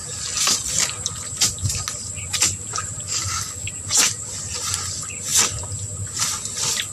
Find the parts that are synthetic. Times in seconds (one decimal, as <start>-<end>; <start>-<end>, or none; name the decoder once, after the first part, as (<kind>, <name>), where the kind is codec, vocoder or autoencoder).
3.1-3.7 (codec, DAC)